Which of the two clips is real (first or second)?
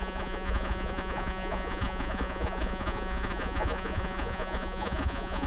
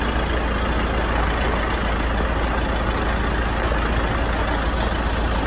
second